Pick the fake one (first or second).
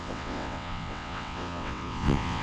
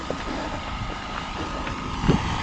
first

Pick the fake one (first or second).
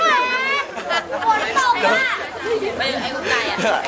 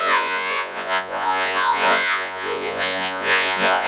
second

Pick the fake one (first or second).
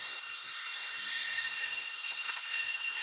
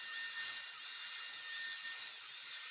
first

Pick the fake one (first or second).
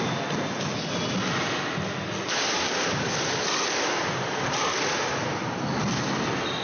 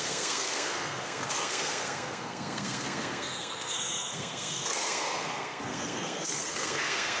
second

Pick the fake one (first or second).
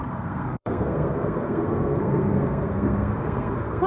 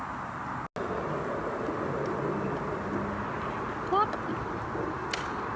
first